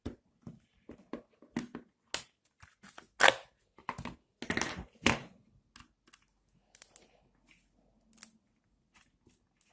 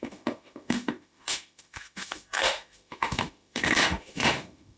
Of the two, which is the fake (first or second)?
second